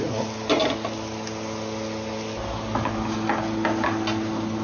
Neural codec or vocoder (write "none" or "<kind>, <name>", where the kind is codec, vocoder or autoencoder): none